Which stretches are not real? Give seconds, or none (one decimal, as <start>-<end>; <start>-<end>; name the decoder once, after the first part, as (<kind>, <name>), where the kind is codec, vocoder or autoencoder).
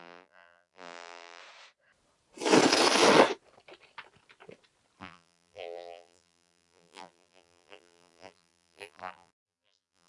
0.0-1.4 (vocoder, BigVGAN v2); 5.0-10.1